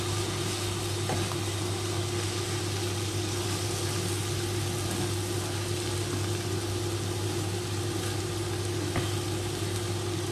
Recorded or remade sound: recorded